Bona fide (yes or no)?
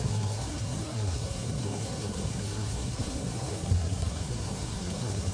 no